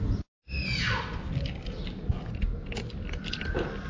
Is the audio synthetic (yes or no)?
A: no